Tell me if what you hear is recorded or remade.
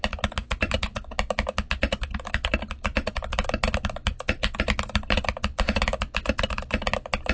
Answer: recorded